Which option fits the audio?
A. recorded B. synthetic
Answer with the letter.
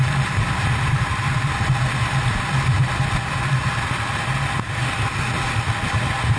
A